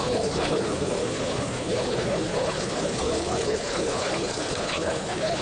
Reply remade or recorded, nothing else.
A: remade